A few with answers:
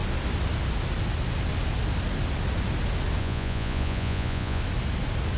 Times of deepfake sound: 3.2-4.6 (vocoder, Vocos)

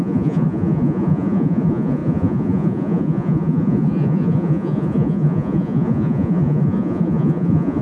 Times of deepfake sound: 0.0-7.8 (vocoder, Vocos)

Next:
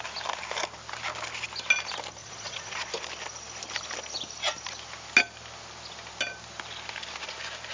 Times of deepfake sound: 2.2-2.9 (vocoder, Vocos)